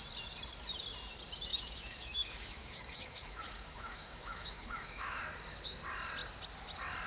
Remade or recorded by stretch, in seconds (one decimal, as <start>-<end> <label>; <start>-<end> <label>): 0.0-1.5 recorded; 1.5-5.2 remade; 5.2-7.1 recorded